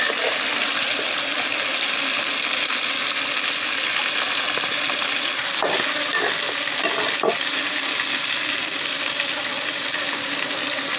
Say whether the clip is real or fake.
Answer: real